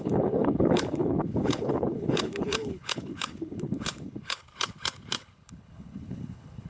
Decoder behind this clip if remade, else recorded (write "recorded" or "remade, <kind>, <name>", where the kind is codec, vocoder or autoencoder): remade, codec, HILCodec